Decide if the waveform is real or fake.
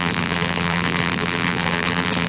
fake